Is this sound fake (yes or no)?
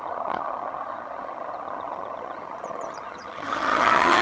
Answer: yes